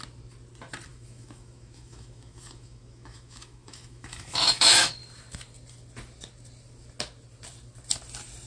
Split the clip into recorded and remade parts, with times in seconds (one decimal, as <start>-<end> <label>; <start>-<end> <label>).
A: 0.0-0.9 recorded; 0.9-4.9 remade; 4.9-8.5 recorded